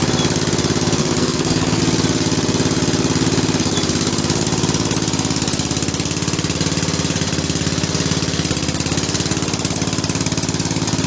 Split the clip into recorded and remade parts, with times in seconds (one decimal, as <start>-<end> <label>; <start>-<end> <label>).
0.0-1.0 recorded; 1.0-1.8 remade; 1.8-11.1 recorded